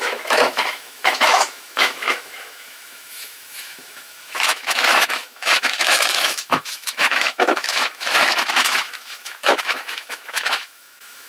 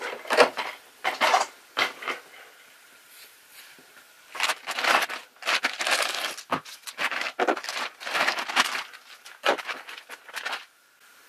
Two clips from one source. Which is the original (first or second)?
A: second